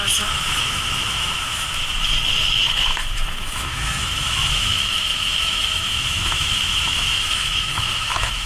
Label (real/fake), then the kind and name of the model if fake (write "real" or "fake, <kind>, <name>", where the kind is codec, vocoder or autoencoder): fake, autoencoder, DAC-VAE